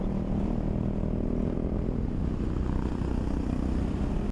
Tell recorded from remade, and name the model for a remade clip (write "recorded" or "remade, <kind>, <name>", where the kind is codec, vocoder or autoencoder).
recorded